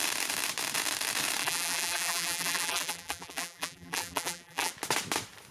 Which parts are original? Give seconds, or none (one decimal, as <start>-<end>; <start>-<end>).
0.0-1.4; 4.7-5.5